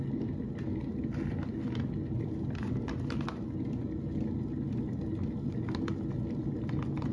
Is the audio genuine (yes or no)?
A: yes